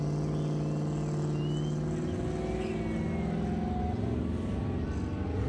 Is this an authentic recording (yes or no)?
yes